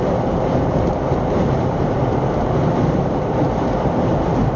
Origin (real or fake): fake